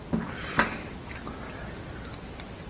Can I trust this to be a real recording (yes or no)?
no